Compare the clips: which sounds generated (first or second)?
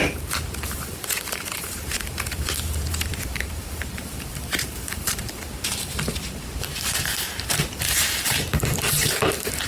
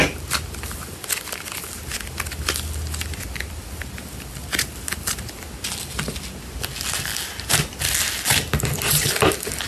first